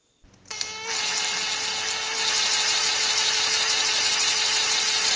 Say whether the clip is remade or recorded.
recorded